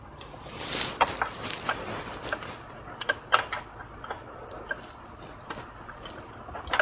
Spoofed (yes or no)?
no